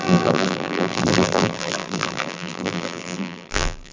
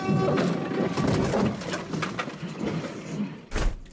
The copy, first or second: first